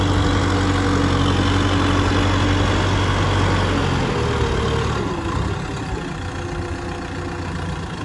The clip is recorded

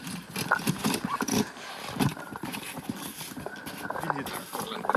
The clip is remade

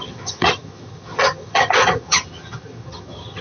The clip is remade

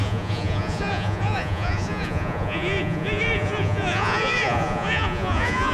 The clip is remade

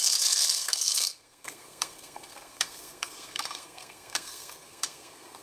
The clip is remade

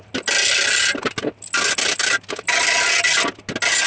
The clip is recorded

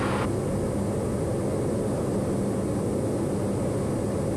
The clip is recorded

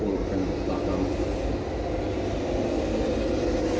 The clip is recorded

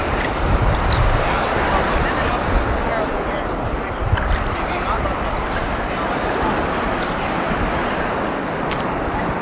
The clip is recorded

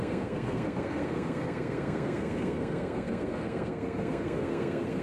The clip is remade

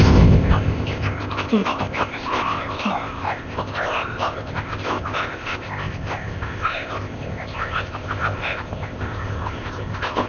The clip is remade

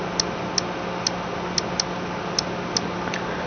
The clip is recorded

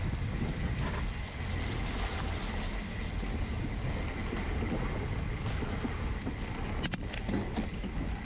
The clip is recorded